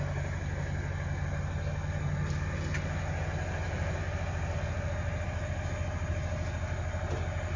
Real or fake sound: real